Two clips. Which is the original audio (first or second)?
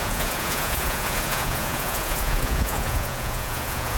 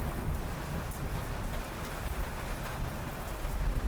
second